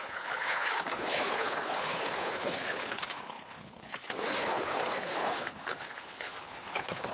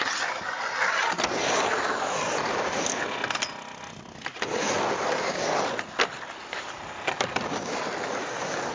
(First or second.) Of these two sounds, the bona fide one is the second